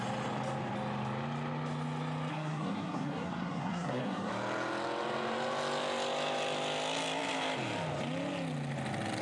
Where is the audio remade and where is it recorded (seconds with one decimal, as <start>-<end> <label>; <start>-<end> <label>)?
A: 0.0-2.3 recorded; 2.3-4.3 remade; 4.3-9.2 recorded

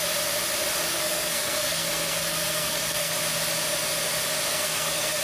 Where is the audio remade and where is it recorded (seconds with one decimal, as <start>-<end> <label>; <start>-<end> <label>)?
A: 0.0-0.9 recorded; 0.9-3.1 remade; 3.1-4.5 recorded; 4.5-5.2 remade

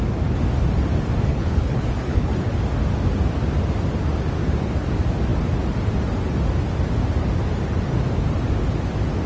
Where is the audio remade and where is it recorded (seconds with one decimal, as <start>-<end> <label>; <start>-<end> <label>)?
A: 0.0-1.3 recorded; 1.3-2.5 remade; 2.5-9.3 recorded

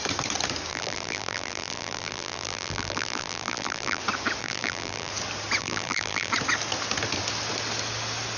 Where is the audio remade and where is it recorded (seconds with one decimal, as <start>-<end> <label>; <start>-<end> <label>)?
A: 0.0-0.7 recorded; 0.7-4.0 remade; 4.0-4.4 recorded; 4.4-5.1 remade; 5.1-5.6 recorded; 5.6-6.3 remade; 6.3-8.4 recorded